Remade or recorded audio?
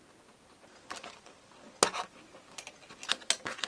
recorded